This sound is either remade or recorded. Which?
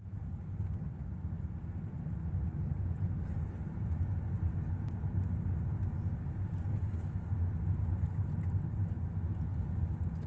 recorded